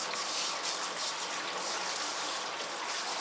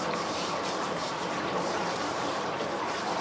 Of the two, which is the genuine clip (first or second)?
first